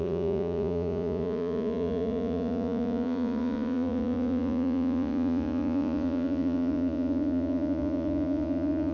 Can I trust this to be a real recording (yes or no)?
no